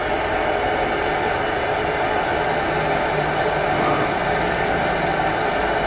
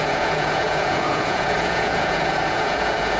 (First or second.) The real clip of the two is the first